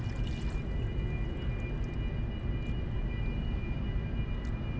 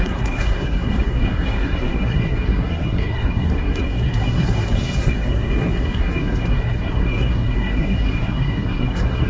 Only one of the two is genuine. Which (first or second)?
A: first